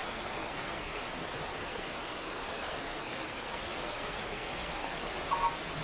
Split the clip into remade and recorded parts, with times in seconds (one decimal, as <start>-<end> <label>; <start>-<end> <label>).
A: 0.0-1.0 remade; 1.0-1.6 recorded; 1.6-5.1 remade; 5.1-5.8 recorded